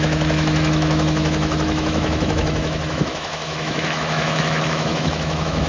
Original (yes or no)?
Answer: no